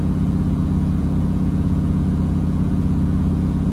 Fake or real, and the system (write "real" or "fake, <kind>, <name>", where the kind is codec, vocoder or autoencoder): fake, vocoder, Vocos